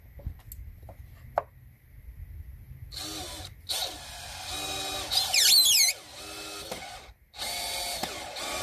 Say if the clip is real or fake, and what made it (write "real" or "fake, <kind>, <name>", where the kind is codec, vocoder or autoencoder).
real